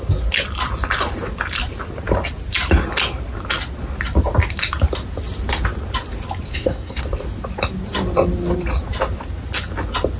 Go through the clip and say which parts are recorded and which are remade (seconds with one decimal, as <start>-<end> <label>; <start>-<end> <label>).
0.0-6.5 recorded; 6.5-7.0 remade; 7.0-10.2 recorded